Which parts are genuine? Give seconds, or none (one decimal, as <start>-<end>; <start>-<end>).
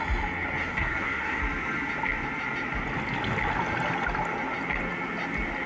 0.0-0.6; 1.4-5.7